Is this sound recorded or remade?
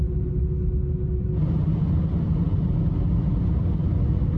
recorded